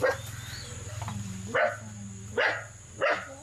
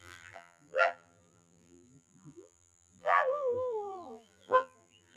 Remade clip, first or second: second